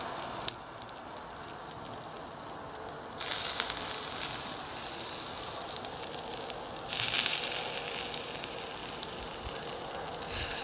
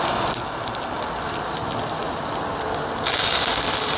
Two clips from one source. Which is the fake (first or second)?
second